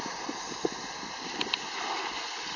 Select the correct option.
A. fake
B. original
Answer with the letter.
B